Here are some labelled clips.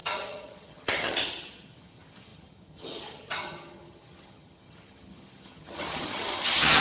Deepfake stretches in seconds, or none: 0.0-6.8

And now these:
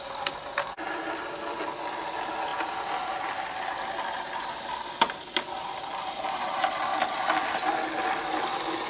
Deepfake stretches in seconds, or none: none

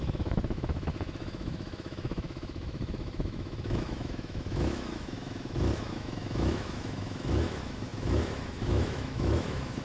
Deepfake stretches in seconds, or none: 0.0-9.8

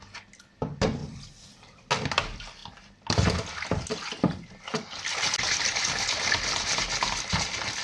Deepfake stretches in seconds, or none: none

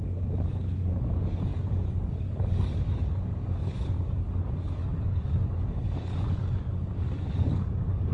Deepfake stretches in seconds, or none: 0.0-8.1

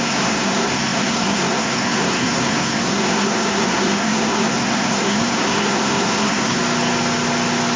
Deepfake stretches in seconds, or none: 0.0-6.6